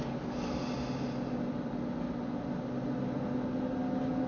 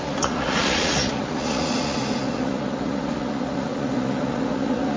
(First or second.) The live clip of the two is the first